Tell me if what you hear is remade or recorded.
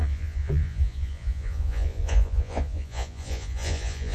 remade